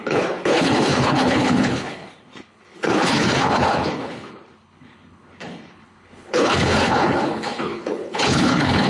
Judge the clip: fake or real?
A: fake